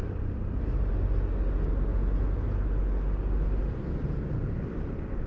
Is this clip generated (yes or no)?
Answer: no